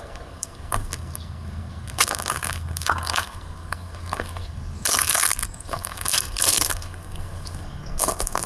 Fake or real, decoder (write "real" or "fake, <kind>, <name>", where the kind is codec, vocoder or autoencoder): fake, codec, SNAC